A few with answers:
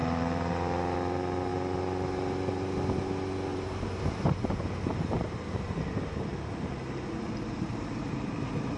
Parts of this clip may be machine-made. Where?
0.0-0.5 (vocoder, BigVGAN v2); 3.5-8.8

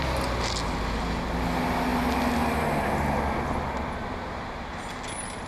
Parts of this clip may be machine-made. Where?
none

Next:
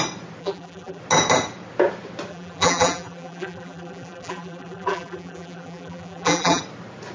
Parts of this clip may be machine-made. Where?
0.4-1.0 (vocoder, BigVGAN v2); 2.3-6.6